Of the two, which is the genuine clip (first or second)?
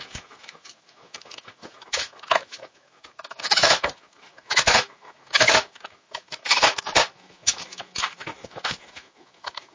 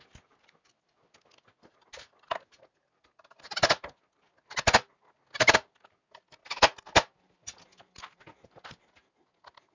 second